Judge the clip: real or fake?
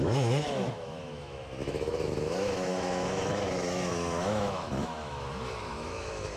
fake